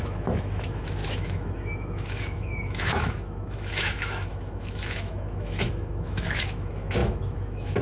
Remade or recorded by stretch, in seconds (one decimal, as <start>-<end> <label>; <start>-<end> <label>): 0.0-7.8 remade

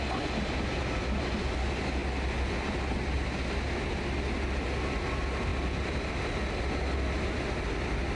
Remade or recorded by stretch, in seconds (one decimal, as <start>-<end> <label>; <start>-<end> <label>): 0.0-8.2 recorded

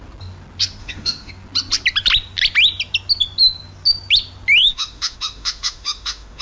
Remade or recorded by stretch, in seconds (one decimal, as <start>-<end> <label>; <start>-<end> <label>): 0.0-0.8 recorded; 0.8-1.3 remade; 1.3-4.6 recorded; 4.6-6.4 remade